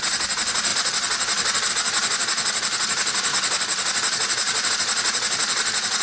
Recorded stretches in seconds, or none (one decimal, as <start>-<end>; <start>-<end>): 0.0-3.3; 4.7-6.0

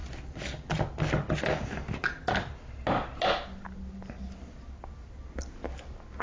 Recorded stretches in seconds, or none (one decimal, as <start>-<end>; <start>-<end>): 0.0-6.2